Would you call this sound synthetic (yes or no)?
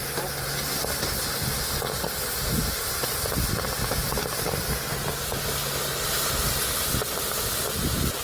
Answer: no